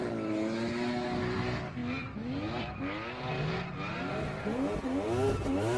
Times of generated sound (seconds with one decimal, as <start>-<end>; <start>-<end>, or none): none